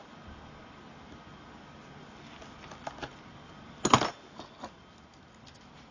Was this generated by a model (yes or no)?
no